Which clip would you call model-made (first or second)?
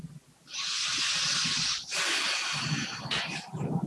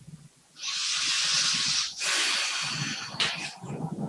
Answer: second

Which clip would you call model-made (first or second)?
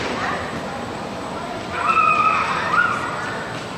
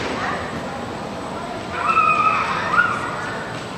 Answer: first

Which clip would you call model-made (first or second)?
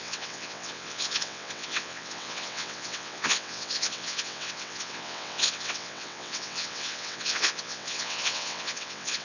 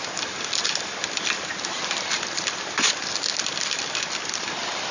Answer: first